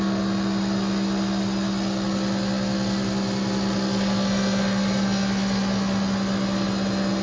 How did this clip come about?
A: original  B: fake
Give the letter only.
A